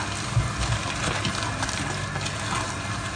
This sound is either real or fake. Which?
real